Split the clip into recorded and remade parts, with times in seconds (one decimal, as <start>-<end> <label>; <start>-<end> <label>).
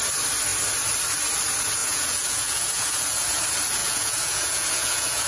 0.0-1.8 recorded; 1.8-3.4 remade; 3.4-3.8 recorded; 3.8-5.3 remade